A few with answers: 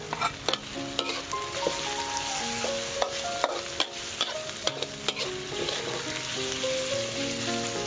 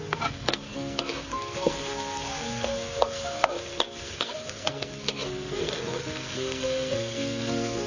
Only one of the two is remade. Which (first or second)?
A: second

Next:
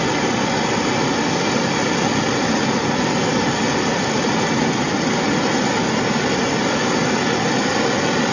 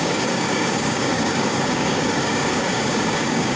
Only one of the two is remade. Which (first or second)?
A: second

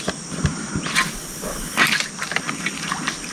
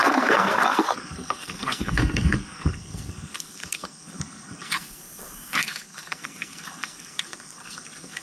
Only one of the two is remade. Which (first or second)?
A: second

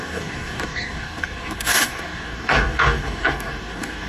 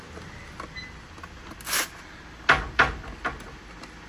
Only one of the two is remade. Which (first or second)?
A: first